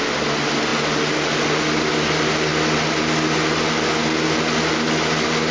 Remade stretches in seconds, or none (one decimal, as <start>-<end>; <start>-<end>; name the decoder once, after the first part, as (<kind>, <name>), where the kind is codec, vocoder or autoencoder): none